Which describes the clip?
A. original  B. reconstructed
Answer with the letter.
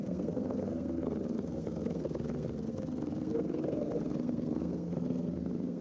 B